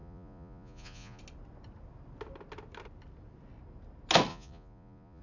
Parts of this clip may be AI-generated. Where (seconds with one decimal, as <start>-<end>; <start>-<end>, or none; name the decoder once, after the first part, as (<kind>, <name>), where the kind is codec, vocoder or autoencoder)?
0.0-1.2 (vocoder, Vocos); 4.3-5.2

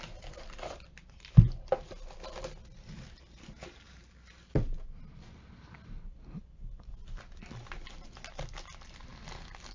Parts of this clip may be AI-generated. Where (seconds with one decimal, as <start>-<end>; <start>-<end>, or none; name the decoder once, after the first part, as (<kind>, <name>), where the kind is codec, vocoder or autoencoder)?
none

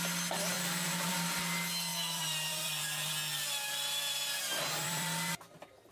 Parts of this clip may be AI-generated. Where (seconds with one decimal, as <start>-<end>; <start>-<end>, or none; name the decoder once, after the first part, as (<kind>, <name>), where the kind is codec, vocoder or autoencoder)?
0.5-1.1 (vocoder, BigVGAN v2); 1.9-5.4

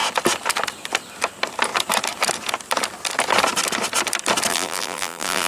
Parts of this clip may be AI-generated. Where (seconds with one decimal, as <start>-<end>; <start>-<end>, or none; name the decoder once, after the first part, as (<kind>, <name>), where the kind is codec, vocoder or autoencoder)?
4.5-5.5 (vocoder, BigVGAN v2)

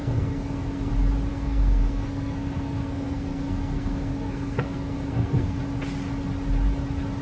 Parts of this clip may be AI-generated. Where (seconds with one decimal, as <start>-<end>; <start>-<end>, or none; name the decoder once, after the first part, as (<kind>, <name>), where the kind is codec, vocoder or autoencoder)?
0.0-0.9 (codec, SNAC); 1.3-5.6

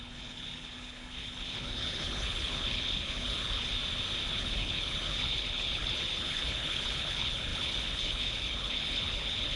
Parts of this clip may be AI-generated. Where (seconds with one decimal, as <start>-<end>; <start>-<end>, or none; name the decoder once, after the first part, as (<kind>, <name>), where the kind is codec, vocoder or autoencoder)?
0.0-3.7 (codec, HILCodec); 4.3-9.6